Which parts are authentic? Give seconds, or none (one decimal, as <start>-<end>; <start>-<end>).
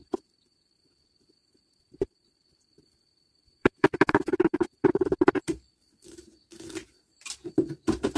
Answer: 0.8-1.4; 5.8-6.8; 7.5-8.2